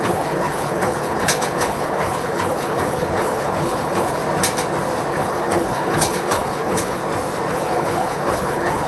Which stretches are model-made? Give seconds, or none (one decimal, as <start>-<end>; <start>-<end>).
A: 0.0-4.2; 5.1-7.0; 7.5-8.9